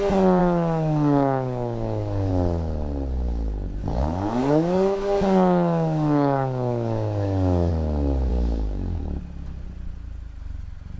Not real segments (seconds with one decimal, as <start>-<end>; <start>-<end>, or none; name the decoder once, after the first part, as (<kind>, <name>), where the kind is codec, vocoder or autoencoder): 0.4-2.3 (codec, DAC); 3.9-7.7; 8.3-9.0